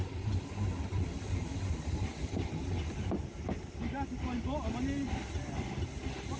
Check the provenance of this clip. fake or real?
real